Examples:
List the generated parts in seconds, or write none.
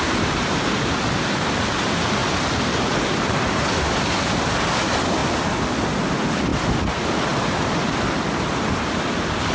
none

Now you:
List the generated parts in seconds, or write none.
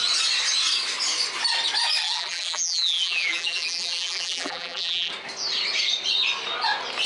2.0-5.1 (vocoder, BigVGAN v2)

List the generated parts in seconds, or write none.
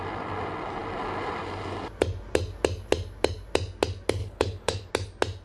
4.2-4.9 (codec, HILCodec)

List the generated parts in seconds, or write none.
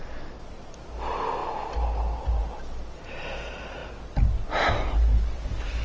none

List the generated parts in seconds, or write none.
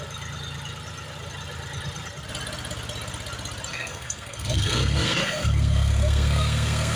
3.7-7.0 (codec, SNAC)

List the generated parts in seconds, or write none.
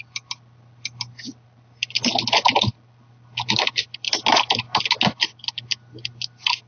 none